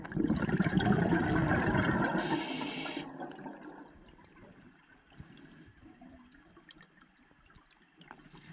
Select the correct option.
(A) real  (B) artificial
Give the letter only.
B